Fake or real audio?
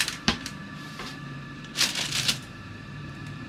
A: fake